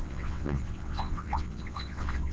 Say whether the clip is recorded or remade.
remade